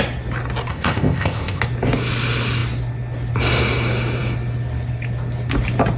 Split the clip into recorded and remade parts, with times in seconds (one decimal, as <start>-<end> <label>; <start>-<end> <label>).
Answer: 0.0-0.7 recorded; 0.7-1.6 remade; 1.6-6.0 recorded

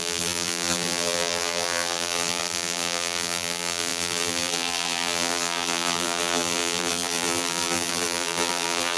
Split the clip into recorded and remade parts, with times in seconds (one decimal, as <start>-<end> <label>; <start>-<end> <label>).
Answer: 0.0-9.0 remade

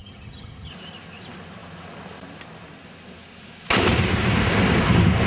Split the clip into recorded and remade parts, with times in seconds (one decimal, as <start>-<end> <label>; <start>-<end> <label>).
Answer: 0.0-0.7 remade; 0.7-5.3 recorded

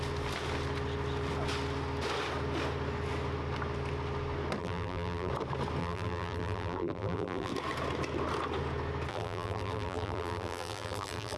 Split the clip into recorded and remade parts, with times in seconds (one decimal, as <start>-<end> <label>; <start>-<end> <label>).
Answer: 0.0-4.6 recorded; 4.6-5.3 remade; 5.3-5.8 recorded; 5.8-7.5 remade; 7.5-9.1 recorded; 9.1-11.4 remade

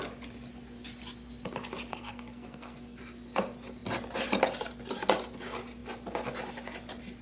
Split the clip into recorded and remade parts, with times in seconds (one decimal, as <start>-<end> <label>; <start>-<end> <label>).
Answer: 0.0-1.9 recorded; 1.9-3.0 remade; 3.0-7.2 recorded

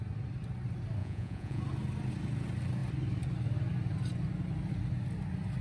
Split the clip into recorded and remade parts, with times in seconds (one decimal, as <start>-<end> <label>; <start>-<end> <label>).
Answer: 0.0-1.0 recorded; 1.0-1.6 remade; 1.6-5.6 recorded